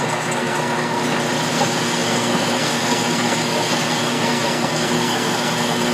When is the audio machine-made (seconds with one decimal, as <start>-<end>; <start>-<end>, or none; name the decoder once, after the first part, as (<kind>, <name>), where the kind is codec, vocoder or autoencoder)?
0.0-1.0 (codec, SNAC); 1.5-5.9

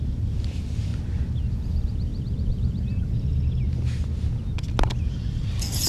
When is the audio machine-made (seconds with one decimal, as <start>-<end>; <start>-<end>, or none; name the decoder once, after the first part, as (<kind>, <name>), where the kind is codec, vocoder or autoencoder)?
0.0-0.9 (vocoder, BigVGAN v2); 1.5-3.4; 5.3-5.9

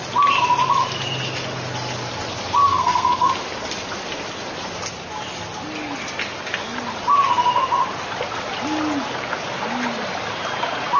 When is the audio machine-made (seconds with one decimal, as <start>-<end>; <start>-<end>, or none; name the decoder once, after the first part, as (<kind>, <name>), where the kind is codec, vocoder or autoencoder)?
2.7-3.3 (codec, SNAC)